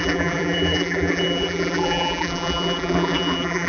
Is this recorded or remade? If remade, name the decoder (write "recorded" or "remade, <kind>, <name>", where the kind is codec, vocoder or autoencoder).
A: remade, vocoder, BigVGAN v2